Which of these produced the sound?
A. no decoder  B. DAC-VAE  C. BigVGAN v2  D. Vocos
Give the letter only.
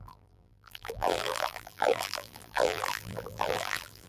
C